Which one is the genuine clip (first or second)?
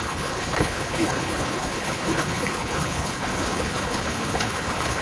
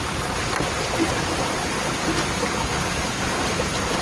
second